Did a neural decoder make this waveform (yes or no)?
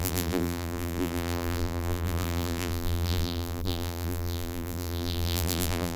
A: yes